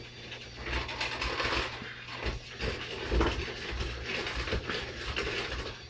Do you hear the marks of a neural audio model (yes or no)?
no